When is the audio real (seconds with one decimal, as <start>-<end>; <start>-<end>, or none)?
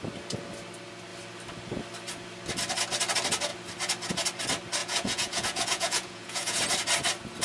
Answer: 0.0-4.8; 6.6-7.4